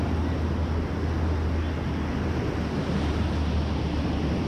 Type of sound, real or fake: real